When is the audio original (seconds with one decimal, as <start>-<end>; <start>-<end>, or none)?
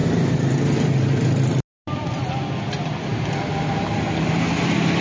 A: 0.0-5.0